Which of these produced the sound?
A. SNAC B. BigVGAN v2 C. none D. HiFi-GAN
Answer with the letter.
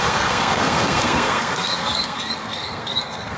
A